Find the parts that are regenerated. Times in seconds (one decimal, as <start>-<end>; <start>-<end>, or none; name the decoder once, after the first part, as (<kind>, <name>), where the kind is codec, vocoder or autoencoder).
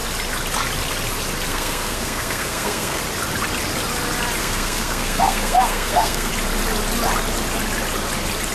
1.5-3.0 (codec, SNAC); 4.4-6.3